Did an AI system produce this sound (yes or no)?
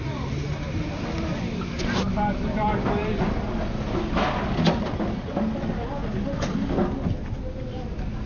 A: no